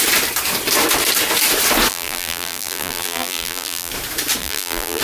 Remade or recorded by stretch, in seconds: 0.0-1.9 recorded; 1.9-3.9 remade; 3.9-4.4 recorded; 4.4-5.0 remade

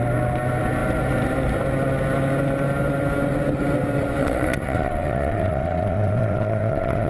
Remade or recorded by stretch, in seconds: 0.0-4.2 recorded; 4.2-7.1 remade